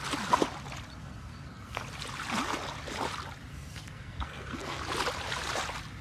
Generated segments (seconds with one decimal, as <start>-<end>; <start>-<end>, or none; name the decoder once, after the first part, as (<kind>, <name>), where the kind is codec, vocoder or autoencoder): 1.0-1.8 (codec, SNAC); 3.5-4.8